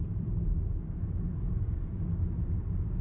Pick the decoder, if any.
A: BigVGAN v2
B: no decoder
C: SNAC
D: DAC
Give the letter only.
A